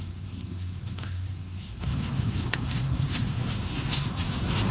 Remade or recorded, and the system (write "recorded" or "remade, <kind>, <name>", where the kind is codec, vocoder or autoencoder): remade, codec, SNAC